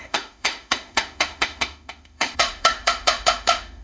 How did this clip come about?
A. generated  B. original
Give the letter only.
A